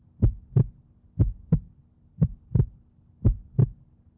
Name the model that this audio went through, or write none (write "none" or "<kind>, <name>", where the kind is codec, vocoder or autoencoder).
none